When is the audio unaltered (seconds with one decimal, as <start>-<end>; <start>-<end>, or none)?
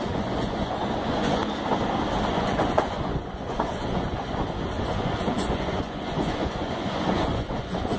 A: 1.4-2.3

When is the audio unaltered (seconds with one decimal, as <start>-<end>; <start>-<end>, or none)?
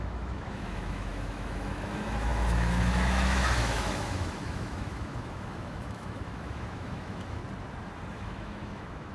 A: 7.4-8.1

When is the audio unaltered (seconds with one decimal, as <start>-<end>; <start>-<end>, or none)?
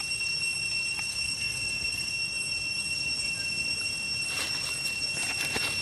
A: 0.0-1.1; 2.1-5.8